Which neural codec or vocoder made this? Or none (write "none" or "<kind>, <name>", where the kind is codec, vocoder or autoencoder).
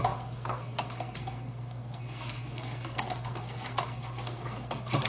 codec, SNAC